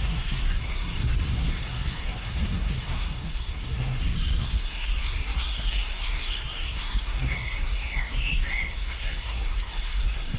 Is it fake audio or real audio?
fake